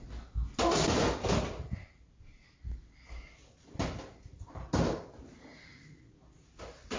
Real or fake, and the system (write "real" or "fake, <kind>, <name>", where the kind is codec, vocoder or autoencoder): real